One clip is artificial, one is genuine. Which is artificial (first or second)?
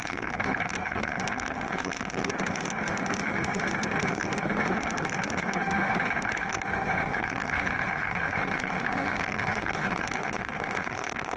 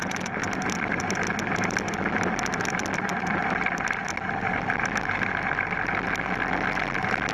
first